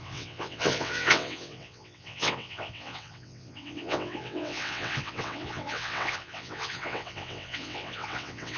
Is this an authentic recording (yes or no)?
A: no